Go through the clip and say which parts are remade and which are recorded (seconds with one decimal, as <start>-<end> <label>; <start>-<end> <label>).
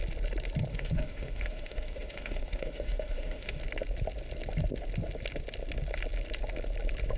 0.0-0.7 recorded; 0.7-3.6 remade; 3.6-7.2 recorded